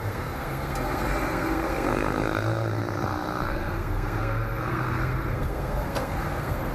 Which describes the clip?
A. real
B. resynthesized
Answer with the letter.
B